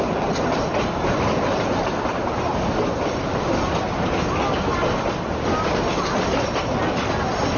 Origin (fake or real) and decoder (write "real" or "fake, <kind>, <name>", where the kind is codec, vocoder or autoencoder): real